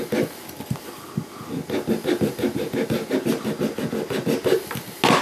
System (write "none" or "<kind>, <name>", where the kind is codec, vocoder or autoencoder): none